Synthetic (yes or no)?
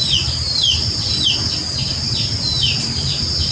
no